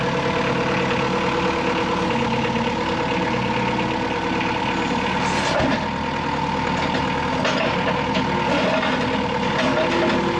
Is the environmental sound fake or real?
real